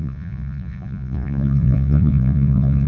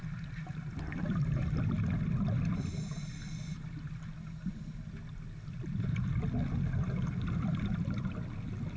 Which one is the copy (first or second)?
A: first